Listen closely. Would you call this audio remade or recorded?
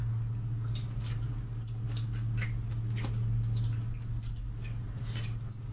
recorded